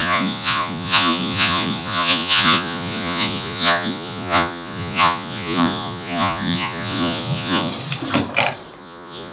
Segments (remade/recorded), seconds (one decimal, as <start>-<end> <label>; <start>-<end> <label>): 0.0-7.7 remade; 7.7-8.8 recorded; 8.8-9.3 remade